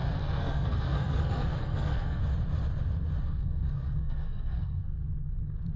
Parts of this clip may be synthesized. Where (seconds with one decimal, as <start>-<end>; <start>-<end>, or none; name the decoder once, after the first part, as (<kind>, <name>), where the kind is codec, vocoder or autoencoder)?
0.0-2.2 (codec, SNAC); 3.2-4.9